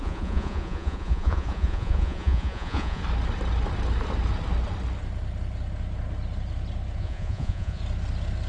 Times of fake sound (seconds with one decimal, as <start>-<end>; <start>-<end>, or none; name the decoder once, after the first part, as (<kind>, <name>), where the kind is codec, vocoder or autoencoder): 0.0-3.0 (vocoder, Vocos); 7.0-7.8